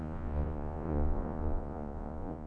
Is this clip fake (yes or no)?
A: yes